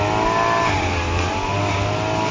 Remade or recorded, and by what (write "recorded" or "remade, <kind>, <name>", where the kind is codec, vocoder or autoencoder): recorded